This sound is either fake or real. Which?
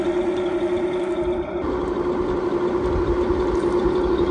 real